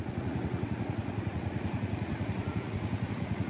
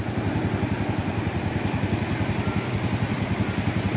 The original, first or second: second